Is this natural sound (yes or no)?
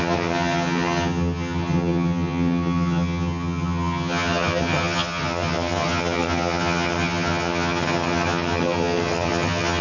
no